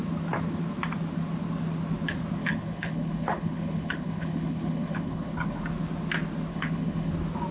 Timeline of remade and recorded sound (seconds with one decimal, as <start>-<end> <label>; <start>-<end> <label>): 0.0-2.4 recorded; 2.4-5.6 remade; 5.6-6.5 recorded; 6.5-7.1 remade; 7.1-7.5 recorded